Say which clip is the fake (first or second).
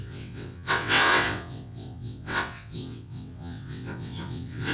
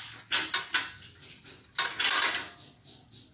first